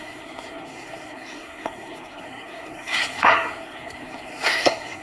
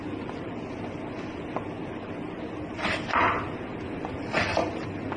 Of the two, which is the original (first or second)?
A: second